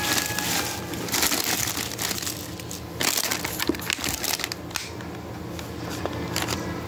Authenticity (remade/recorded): recorded